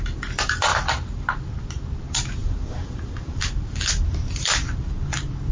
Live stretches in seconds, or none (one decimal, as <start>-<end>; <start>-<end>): 0.0-0.7; 1.2-2.4; 5.0-5.5